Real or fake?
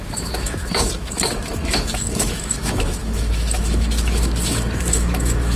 fake